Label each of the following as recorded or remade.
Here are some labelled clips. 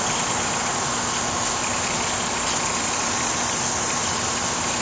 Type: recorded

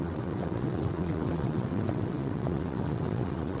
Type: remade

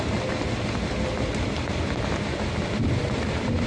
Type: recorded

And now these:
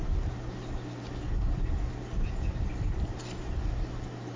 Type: recorded